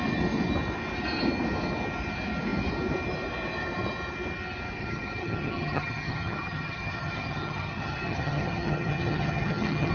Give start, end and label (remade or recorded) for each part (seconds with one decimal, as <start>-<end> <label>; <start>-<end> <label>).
0.0-4.8 recorded; 4.8-9.9 remade